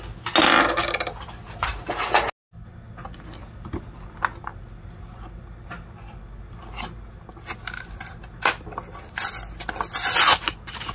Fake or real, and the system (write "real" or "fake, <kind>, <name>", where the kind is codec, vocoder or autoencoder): real